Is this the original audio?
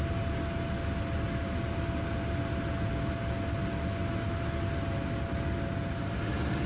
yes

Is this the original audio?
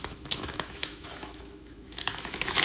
no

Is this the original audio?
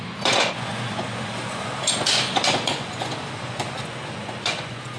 no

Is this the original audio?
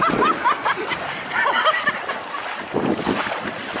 yes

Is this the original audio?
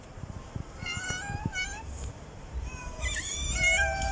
yes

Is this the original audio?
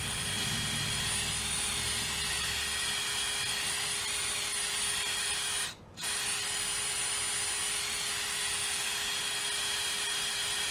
yes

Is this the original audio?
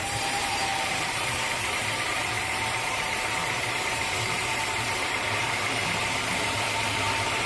no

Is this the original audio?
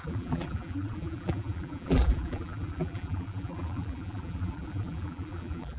no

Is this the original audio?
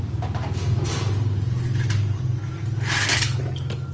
yes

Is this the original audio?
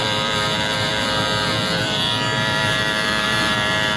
no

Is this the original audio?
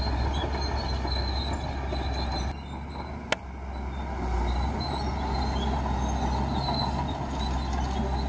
yes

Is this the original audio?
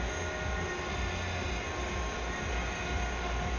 yes